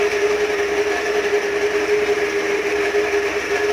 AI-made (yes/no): no